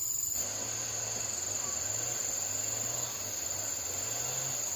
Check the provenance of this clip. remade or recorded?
recorded